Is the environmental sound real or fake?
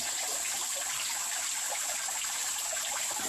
real